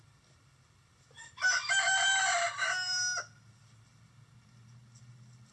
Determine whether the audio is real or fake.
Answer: real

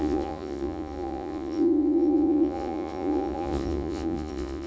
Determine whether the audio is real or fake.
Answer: fake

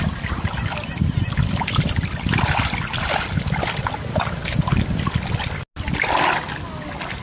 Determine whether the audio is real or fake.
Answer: real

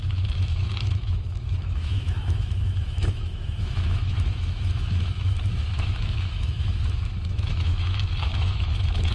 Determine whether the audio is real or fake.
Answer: fake